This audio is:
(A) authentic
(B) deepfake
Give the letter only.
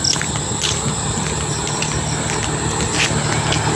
A